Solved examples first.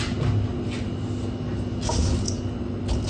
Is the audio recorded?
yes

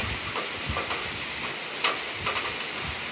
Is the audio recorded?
yes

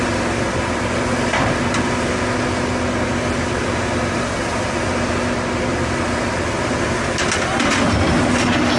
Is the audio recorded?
yes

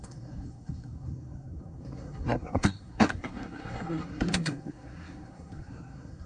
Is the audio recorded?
no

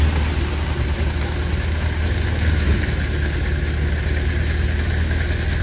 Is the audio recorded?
yes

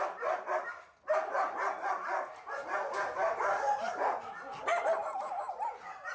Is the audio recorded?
yes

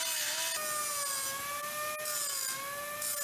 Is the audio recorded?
yes